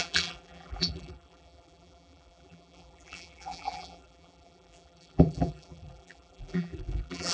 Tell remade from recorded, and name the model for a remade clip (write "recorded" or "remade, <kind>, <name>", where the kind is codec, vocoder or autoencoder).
remade, vocoder, BigVGAN v2